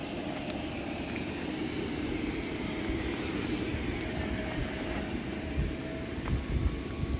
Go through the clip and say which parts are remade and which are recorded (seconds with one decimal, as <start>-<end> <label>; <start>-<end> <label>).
0.0-2.6 remade; 2.6-7.2 recorded